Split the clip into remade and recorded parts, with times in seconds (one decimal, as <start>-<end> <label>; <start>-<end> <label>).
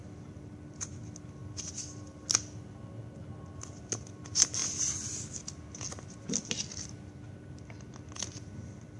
0.0-0.6 remade; 0.6-1.4 recorded; 1.4-2.7 remade; 2.7-9.0 recorded